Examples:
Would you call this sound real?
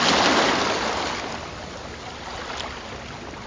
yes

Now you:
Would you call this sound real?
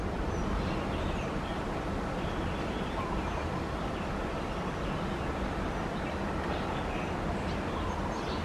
yes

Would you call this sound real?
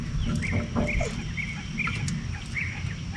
yes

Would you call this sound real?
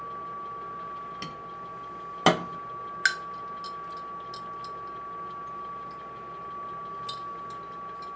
yes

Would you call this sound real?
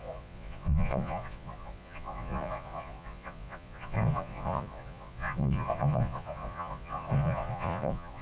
no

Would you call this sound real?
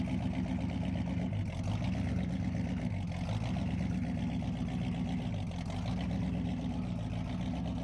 yes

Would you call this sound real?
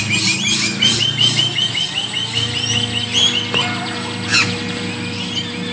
yes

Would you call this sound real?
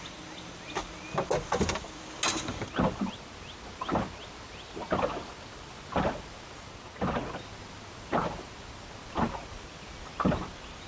yes